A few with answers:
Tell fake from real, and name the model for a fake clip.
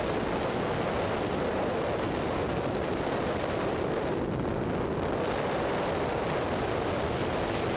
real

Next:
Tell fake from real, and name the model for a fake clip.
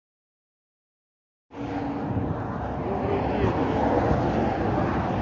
real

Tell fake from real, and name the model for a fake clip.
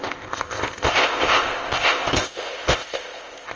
fake, codec, ZipCodec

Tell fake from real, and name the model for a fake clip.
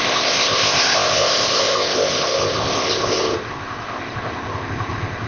fake, codec, ZipCodec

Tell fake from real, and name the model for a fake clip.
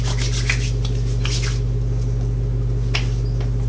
real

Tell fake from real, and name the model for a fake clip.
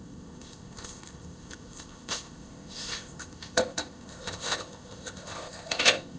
fake, codec, ZipCodec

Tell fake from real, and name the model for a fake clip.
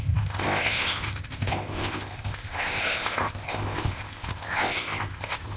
fake, codec, ZipCodec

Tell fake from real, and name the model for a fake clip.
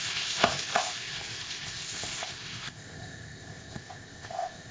fake, codec, ZipCodec